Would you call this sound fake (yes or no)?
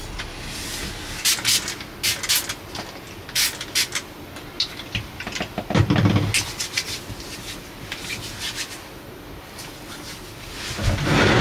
no